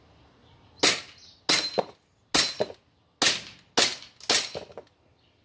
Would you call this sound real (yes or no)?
yes